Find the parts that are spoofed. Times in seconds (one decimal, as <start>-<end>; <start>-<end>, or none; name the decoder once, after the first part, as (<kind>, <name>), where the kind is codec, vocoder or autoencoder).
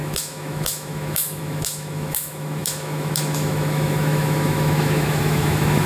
0.0-5.9 (autoencoder, DAC-VAE)